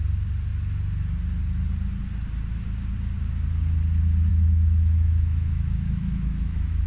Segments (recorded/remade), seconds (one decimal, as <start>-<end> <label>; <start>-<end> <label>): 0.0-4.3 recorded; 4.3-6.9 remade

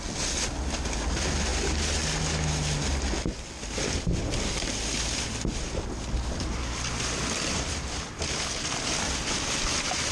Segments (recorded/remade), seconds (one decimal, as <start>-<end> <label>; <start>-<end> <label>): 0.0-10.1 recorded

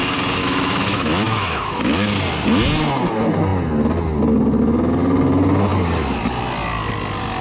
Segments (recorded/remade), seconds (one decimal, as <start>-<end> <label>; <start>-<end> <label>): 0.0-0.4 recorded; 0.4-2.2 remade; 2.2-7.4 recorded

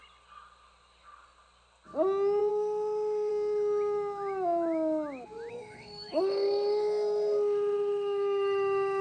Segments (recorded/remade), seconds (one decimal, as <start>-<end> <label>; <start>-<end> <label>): 0.0-2.5 recorded; 2.5-3.3 remade; 3.3-5.5 recorded; 5.5-9.0 remade

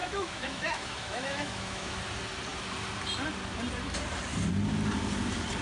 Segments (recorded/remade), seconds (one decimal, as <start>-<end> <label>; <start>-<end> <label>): 0.0-2.0 remade; 2.0-5.6 recorded

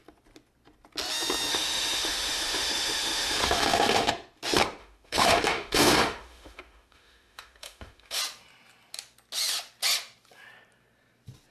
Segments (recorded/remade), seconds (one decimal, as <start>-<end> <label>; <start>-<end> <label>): 0.0-1.5 recorded; 1.5-4.1 remade; 4.1-4.8 recorded; 4.8-8.2 remade; 8.2-11.5 recorded